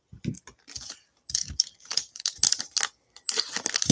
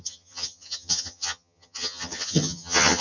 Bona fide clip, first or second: first